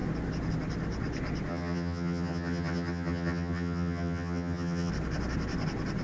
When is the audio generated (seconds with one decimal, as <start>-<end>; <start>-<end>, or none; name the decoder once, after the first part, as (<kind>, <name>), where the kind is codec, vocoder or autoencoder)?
1.5-4.9 (vocoder, HiFi-GAN)